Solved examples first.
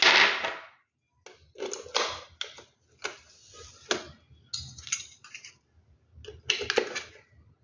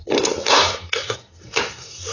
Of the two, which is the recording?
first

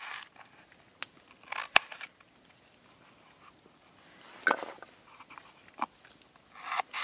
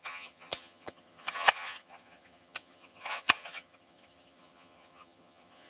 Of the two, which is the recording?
first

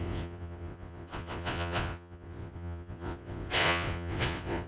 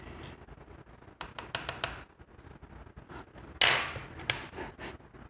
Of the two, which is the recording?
second